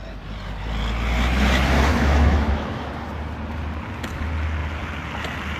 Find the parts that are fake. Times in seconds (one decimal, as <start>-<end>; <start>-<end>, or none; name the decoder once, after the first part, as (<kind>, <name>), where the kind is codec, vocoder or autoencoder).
1.9-2.9 (autoencoder, DAC-VAE)